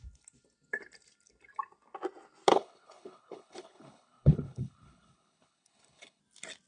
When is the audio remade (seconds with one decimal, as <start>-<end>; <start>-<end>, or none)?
2.5-6.2